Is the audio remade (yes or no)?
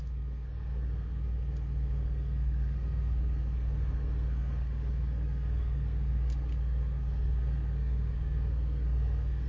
yes